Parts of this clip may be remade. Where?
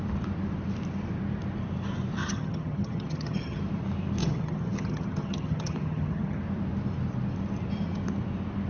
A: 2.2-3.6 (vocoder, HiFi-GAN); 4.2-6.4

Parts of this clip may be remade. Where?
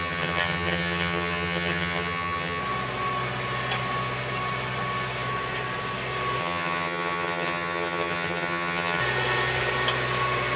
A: 0.0-2.6 (vocoder, HiFi-GAN); 6.4-9.0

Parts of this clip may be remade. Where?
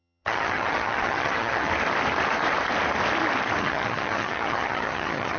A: 0.0-1.7 (vocoder, HiFi-GAN); 3.6-5.4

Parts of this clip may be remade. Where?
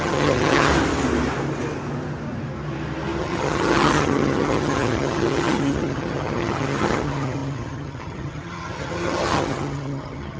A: 0.0-0.7 (vocoder, HiFi-GAN); 3.2-10.4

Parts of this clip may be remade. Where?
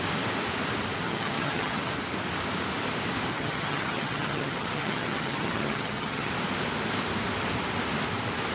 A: 1.0-1.9 (vocoder, HiFi-GAN); 3.3-6.3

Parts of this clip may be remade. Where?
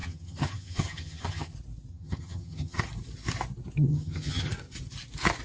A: 0.0-1.5 (vocoder, HiFi-GAN); 1.9-2.8; 3.9-4.5